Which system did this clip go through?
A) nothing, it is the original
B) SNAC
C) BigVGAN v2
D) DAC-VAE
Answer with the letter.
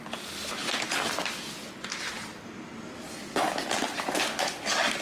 A